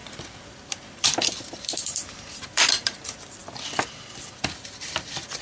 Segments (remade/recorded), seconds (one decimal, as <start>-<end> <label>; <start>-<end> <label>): 0.0-5.4 remade